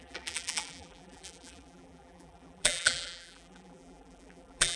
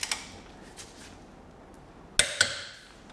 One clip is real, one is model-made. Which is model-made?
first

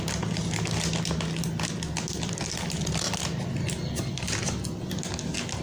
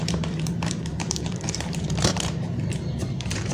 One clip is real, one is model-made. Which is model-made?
second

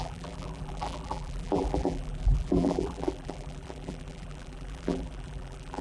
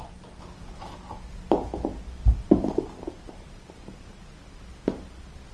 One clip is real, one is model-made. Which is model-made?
first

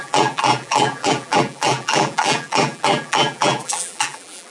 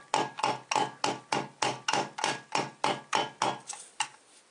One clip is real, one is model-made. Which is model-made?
first